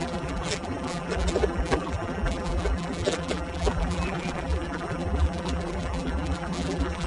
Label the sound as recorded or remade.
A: remade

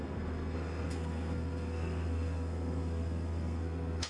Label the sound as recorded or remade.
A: remade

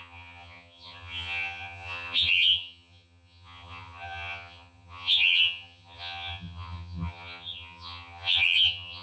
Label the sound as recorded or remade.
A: remade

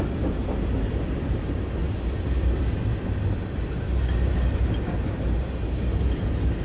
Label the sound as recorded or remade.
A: recorded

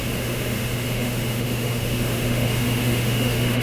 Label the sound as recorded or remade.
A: remade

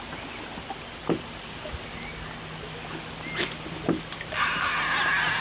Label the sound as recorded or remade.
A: recorded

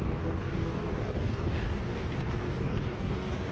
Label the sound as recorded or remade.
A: remade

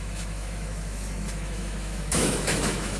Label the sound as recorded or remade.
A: remade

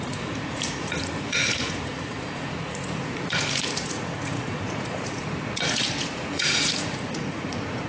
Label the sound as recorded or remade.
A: remade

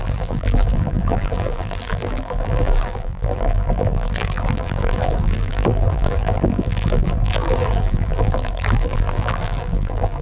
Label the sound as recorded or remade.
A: remade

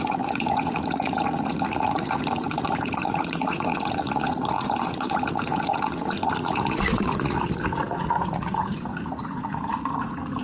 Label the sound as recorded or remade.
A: remade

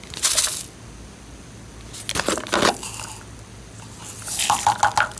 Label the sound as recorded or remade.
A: recorded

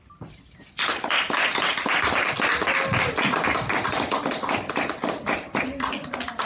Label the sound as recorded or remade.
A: recorded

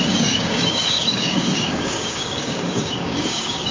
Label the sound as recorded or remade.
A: remade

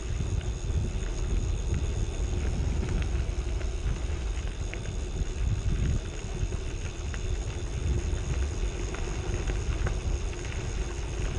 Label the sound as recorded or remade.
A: recorded